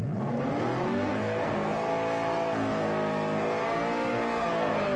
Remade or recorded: remade